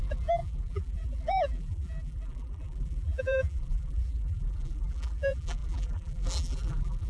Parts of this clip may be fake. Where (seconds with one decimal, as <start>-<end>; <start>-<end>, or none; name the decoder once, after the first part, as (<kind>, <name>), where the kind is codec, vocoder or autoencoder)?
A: 0.0-7.1 (vocoder, BigVGAN v2)